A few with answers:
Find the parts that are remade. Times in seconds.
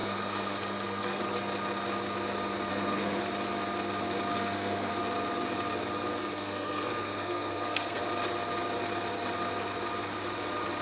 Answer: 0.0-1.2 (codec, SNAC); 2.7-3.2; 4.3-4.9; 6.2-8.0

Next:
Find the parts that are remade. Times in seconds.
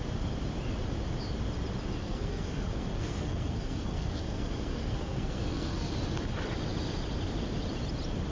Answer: 2.0-5.9 (codec, SNAC)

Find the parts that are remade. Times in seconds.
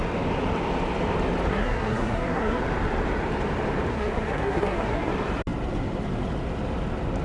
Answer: 1.5-2.6 (codec, SNAC); 3.9-5.1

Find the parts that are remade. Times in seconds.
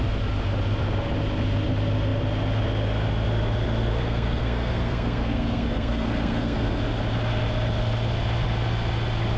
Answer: 4.0-6.8 (codec, SNAC)